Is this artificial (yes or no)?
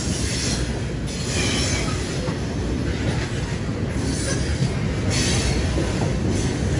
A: no